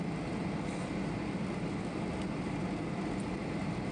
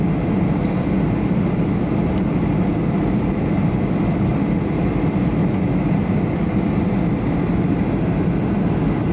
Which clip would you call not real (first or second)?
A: first